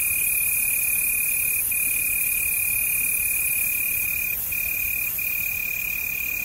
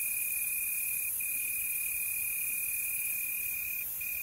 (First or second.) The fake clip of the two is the second